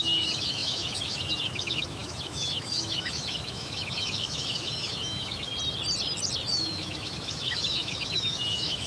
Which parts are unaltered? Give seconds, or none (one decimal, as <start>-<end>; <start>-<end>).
5.5-6.5